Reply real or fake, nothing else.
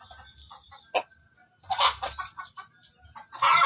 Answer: real